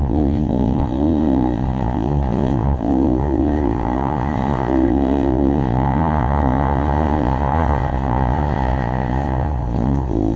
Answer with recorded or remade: remade